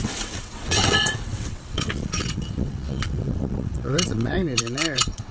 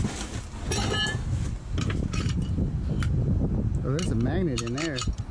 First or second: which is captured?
second